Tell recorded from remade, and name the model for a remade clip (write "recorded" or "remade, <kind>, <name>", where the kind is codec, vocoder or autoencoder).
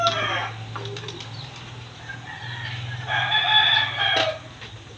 recorded